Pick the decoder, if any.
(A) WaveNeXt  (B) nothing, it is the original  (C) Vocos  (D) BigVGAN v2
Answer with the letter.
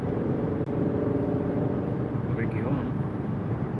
D